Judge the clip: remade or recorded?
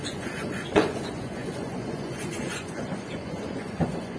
remade